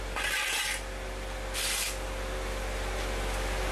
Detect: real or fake real